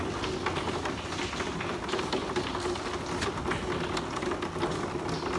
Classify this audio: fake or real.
real